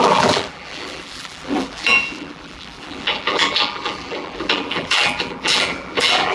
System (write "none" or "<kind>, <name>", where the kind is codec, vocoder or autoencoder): vocoder, BigVGAN v2